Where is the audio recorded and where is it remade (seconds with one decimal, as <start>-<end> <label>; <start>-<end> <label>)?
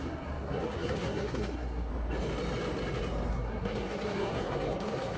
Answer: 0.0-1.9 remade; 1.9-3.3 recorded; 3.3-5.2 remade